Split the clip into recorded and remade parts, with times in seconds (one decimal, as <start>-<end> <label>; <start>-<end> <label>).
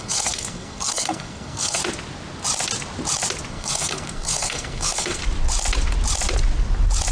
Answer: 0.0-1.8 remade; 1.8-3.5 recorded; 3.5-5.2 remade; 5.2-7.1 recorded